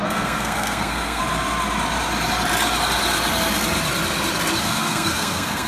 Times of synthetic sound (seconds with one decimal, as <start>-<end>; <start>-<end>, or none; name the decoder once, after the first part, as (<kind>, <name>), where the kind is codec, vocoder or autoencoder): 0.0-1.2 (codec, SNAC); 4.6-5.7